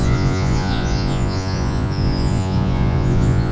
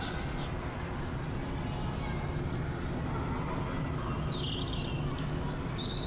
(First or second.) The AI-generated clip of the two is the first